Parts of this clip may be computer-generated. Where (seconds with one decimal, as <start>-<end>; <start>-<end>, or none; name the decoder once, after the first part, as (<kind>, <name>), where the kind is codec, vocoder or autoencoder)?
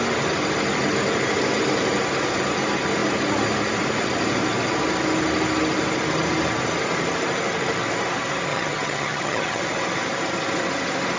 8.5-9.6 (vocoder, HiFi-GAN)